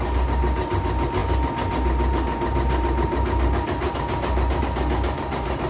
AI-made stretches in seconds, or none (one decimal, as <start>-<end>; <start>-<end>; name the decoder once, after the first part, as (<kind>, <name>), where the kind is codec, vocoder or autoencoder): none